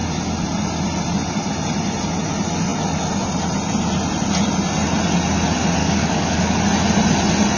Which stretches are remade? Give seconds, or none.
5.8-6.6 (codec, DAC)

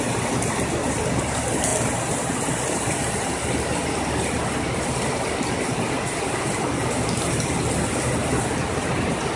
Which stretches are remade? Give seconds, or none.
none

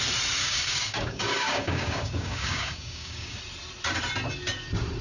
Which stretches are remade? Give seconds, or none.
0.4-3.4 (codec, DAC)

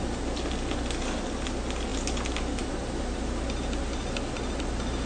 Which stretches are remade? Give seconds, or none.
none

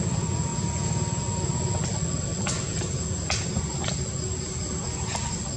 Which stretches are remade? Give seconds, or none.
none